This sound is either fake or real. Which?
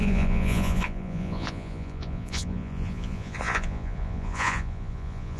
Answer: fake